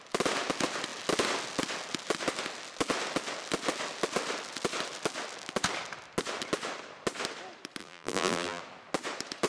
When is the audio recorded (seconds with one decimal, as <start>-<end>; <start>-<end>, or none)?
0.0-7.8; 8.6-9.5